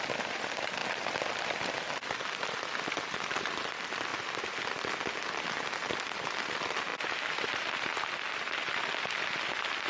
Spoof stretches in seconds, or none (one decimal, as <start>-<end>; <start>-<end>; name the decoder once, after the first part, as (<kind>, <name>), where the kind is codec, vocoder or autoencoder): 0.0-0.8 (vocoder, BigVGAN v2); 2.4-4.1; 6.5-6.9; 7.4-9.9